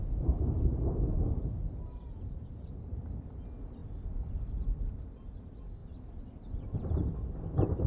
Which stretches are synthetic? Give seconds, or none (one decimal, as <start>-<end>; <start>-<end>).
2.0-2.9